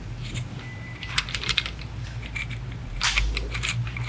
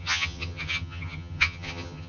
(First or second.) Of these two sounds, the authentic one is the first